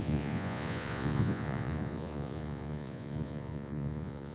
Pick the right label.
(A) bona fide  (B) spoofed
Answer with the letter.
B